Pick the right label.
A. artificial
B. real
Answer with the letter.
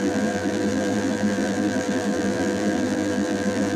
A